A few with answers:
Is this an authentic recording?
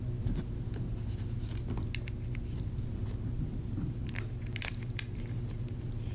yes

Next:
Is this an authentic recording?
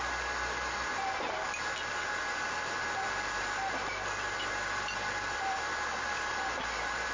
no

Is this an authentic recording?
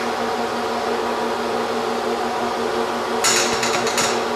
yes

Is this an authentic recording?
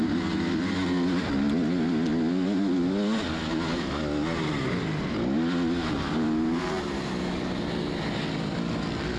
yes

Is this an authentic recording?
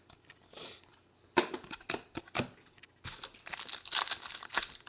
yes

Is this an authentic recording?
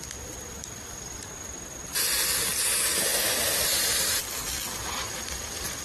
no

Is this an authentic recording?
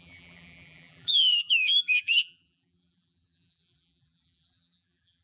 no